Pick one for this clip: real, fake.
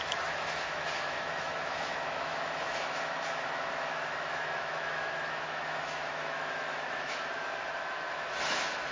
fake